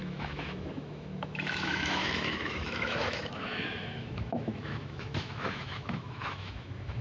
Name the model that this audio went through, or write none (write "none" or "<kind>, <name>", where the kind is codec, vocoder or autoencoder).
autoencoder, DAC-VAE